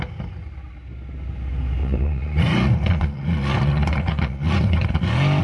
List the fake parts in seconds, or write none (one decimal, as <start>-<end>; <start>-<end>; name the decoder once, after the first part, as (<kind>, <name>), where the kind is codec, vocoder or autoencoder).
1.8-5.0 (vocoder, Vocos)